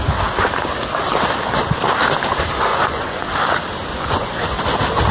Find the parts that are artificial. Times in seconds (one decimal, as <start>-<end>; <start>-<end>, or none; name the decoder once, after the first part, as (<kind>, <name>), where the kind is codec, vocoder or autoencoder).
2.7-3.3 (vocoder, Vocos); 3.9-4.6